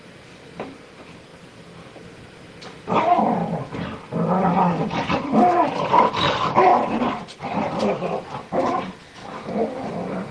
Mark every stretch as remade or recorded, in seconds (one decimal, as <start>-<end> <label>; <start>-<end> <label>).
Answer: 0.0-3.4 remade; 3.4-5.7 recorded; 5.7-10.3 remade